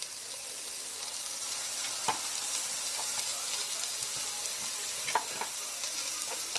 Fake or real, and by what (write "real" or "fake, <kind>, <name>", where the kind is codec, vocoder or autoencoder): real